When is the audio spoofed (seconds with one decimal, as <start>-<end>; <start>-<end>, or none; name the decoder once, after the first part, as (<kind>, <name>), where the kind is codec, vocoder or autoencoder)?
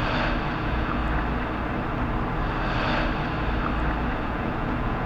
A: 0.6-1.0 (vocoder, Vocos); 4.1-5.1